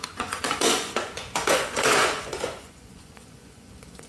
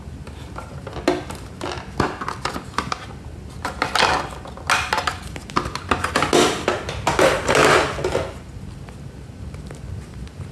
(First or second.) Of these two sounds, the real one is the second